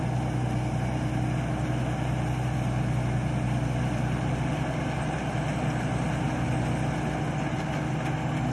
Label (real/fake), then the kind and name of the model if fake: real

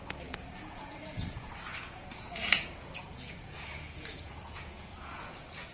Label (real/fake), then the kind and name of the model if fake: fake, vocoder, Vocos